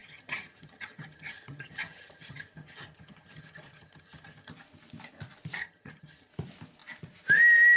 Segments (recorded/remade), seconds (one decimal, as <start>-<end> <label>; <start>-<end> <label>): 0.0-4.5 remade; 4.5-5.6 recorded; 5.6-6.3 remade; 6.3-7.8 recorded